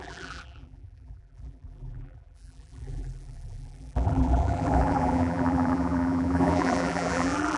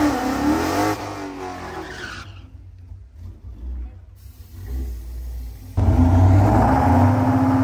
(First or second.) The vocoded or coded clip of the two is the first